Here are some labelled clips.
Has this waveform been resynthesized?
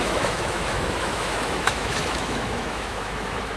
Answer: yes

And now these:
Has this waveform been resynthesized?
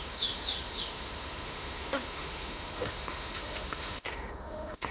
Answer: yes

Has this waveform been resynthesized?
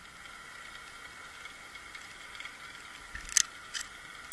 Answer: no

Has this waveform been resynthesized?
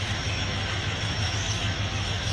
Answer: yes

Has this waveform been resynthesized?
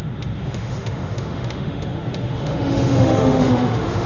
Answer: yes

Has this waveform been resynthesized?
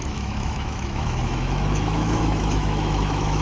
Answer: yes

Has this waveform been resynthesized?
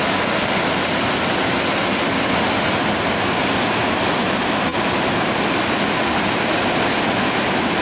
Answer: no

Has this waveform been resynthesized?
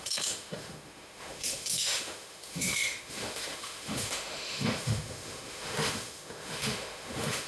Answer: yes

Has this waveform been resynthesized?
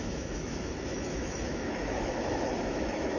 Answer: yes